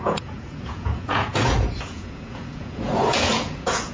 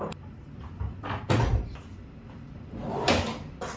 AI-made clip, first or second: first